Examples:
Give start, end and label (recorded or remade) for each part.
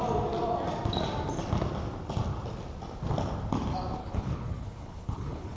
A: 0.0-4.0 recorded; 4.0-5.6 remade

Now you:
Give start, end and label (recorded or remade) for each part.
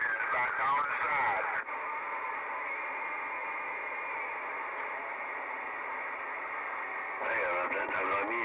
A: 0.0-8.4 recorded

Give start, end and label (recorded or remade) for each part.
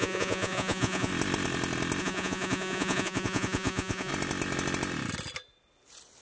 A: 0.0-1.1 remade; 1.1-2.0 recorded; 2.0-4.1 remade; 4.1-6.2 recorded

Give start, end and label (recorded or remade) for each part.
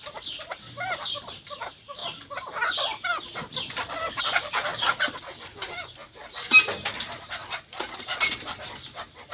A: 0.0-2.0 remade; 2.0-4.2 recorded; 4.2-9.3 remade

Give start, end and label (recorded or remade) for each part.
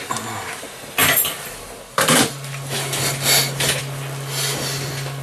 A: 0.0-5.2 recorded